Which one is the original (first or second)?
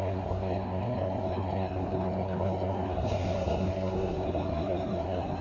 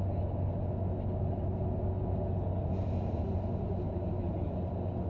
second